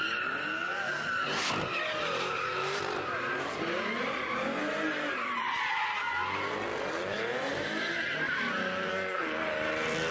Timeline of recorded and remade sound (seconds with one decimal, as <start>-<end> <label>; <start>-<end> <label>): 0.0-8.9 recorded; 8.9-9.4 remade; 9.4-10.1 recorded